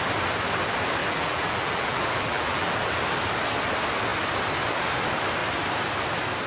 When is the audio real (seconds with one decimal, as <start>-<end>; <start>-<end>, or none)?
0.0-1.0; 2.7-6.5